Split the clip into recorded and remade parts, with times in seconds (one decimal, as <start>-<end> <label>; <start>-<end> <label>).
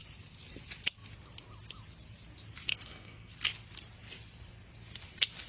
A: 0.0-2.7 recorded; 2.7-3.3 remade; 3.3-5.5 recorded